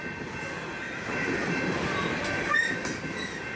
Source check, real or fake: fake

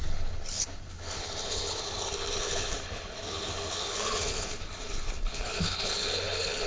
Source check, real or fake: fake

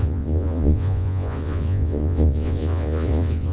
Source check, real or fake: fake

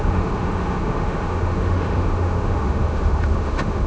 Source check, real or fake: fake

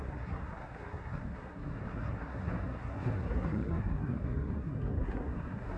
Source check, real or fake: fake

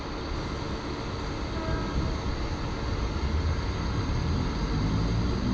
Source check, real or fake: real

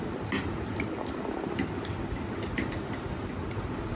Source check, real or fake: real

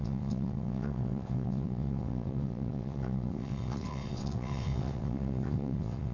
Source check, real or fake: fake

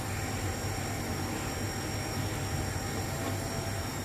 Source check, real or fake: real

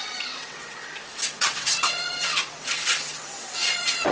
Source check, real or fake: fake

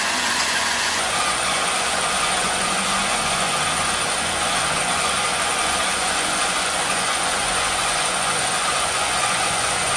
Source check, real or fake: fake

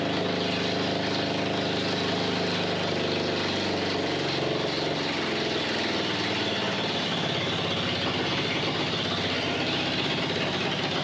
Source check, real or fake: real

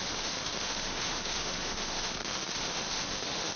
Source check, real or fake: fake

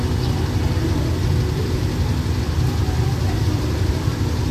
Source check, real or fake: real